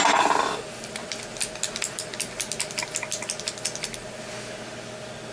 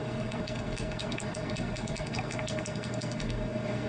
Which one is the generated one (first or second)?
second